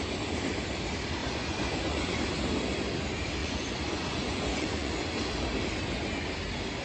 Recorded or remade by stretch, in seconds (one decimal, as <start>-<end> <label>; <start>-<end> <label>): 0.0-1.2 recorded; 1.2-2.3 remade; 2.3-3.4 recorded; 3.4-4.9 remade; 4.9-6.8 recorded